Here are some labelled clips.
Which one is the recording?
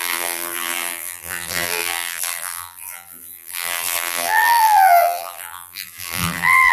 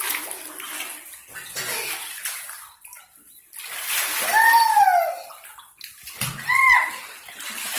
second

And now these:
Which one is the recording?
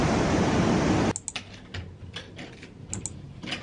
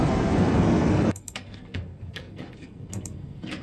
first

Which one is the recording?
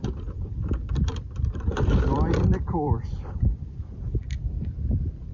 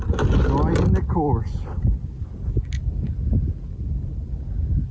second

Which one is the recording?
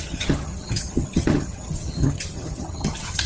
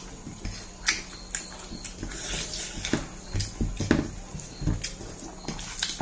second